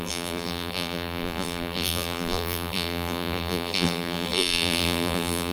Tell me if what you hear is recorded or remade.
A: remade